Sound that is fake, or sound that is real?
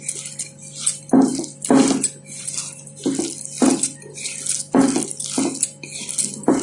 real